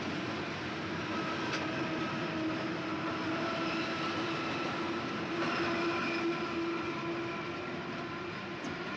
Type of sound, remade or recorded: recorded